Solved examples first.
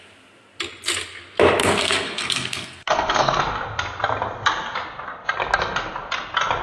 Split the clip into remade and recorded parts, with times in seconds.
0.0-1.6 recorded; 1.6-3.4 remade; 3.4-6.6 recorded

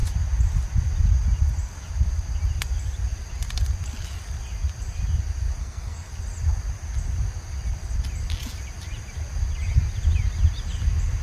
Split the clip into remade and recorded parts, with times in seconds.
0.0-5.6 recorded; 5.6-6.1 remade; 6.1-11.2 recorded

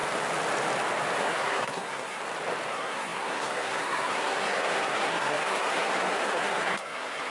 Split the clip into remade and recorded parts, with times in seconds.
0.0-1.2 recorded; 1.2-2.2 remade; 2.2-2.7 recorded; 2.7-7.3 remade